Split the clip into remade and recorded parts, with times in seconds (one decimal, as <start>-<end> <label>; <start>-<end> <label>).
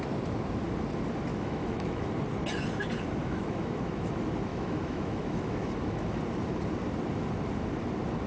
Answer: 0.0-1.3 recorded; 1.3-2.1 remade; 2.1-3.2 recorded; 3.2-4.1 remade; 4.1-4.5 recorded; 4.5-6.2 remade; 6.2-8.3 recorded